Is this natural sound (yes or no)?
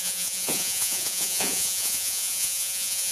no